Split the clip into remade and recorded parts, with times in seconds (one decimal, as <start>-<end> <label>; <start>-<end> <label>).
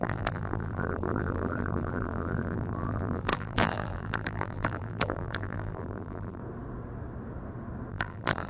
0.0-6.4 remade; 6.4-7.9 recorded; 7.9-8.5 remade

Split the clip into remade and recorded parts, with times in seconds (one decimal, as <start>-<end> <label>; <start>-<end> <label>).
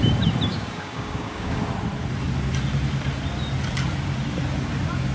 0.0-0.5 recorded; 0.5-1.6 remade; 1.6-5.1 recorded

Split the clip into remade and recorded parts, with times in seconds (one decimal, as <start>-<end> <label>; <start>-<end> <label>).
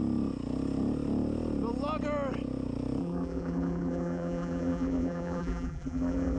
0.0-3.0 recorded; 3.0-6.4 remade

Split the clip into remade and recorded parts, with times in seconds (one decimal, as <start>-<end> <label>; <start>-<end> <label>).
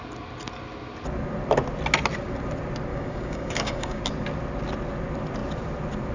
0.0-2.9 recorded; 2.9-4.0 remade; 4.0-6.1 recorded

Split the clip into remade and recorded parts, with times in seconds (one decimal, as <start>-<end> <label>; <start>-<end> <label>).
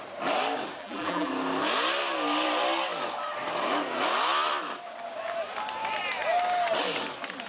0.0-0.8 recorded; 0.8-1.3 remade; 1.3-7.5 recorded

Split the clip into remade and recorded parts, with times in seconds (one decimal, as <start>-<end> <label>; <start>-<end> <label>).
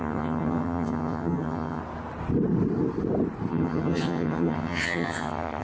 0.0-1.8 remade; 1.8-3.5 recorded; 3.5-5.6 remade